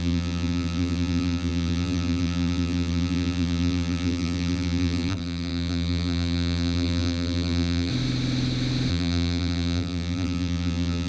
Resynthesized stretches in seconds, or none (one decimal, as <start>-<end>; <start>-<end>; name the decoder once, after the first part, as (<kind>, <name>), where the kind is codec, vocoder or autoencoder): 0.0-7.9 (vocoder, BigVGAN v2); 8.9-11.1